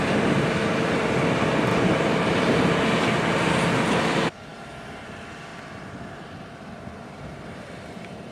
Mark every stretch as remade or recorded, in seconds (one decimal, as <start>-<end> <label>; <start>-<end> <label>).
0.0-1.7 recorded; 1.7-2.7 remade; 2.7-5.5 recorded; 5.5-8.3 remade